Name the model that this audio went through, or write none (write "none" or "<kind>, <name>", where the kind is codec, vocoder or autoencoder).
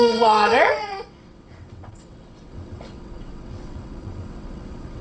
vocoder, WaveNeXt